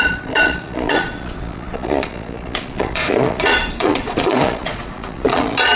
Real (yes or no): no